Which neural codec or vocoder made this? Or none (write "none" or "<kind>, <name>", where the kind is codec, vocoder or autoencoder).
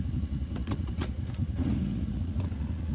vocoder, Vocos